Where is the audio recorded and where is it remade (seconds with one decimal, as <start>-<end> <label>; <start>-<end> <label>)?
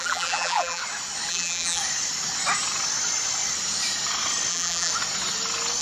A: 0.0-0.8 remade; 0.8-1.3 recorded; 1.3-1.8 remade; 1.8-4.5 recorded; 4.5-4.9 remade; 4.9-5.8 recorded